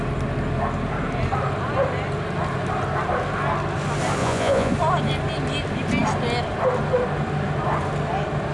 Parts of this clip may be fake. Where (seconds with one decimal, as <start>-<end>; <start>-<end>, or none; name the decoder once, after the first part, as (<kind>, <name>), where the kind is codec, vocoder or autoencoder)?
4.2-4.7 (vocoder, Vocos)